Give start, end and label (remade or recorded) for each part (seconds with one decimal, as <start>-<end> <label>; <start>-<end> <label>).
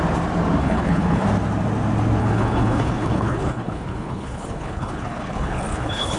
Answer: 0.0-0.6 recorded; 0.6-1.2 remade; 1.2-2.2 recorded; 2.2-6.2 remade